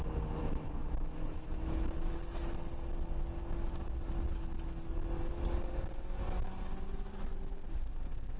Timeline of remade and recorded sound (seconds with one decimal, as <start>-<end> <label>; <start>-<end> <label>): 0.0-0.4 recorded; 0.4-2.1 remade; 2.1-8.4 recorded